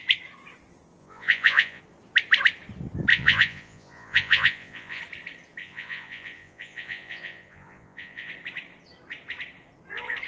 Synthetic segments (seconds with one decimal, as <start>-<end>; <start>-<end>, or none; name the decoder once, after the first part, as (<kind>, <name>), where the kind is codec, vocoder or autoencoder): 1.0-1.8 (vocoder, Vocos); 3.1-5.0; 5.6-8.3